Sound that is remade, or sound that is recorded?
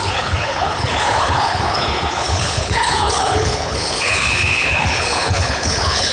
remade